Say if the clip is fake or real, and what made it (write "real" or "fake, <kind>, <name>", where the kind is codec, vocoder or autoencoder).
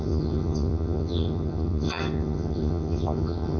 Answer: fake, vocoder, HiFi-GAN